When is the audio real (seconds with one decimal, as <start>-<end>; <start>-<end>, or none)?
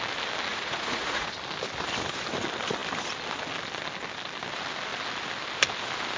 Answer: 0.0-0.5; 1.3-6.2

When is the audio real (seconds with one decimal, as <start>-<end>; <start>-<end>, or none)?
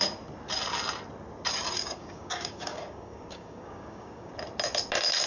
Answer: 0.0-1.8; 4.3-5.3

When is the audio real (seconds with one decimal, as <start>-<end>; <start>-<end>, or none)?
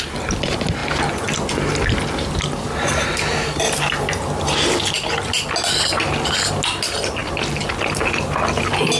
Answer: 0.0-9.0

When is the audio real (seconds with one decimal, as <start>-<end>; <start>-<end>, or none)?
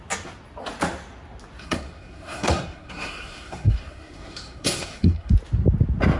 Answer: 0.0-1.6; 5.3-6.2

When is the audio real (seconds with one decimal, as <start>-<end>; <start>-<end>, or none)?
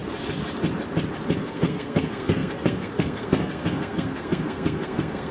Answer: 0.0-1.4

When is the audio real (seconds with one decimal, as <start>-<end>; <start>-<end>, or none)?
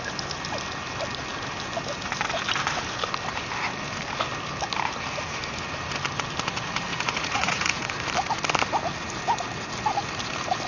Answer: 0.0-6.9; 8.0-10.7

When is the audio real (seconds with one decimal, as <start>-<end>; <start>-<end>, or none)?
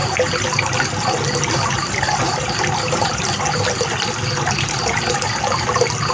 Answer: 0.0-6.1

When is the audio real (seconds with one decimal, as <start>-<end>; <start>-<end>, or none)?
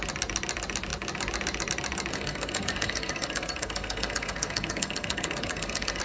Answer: 0.0-2.1